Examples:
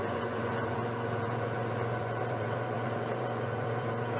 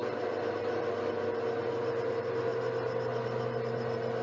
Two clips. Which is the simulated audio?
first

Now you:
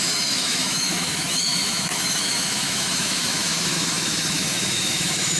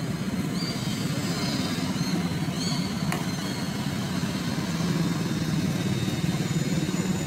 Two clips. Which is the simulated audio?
first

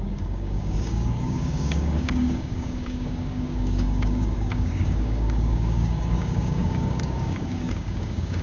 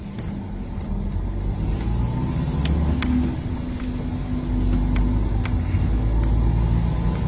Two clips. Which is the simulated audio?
first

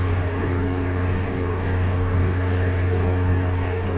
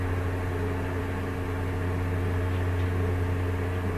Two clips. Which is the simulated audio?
first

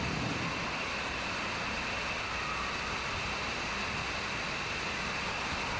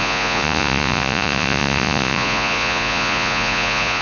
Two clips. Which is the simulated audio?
second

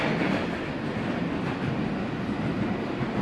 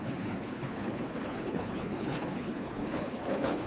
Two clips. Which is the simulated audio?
second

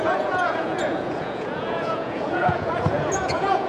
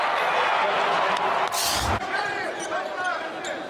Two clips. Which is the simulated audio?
first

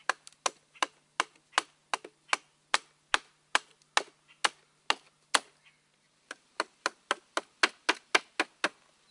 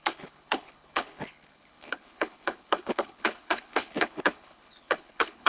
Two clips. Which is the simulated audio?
second